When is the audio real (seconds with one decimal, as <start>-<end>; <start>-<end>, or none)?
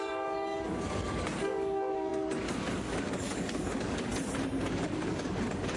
4.1-4.7